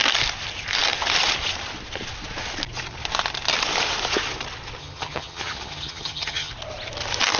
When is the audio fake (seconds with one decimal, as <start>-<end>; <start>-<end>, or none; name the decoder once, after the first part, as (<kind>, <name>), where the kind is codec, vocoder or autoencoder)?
4.8-6.5 (vocoder, HiFi-GAN)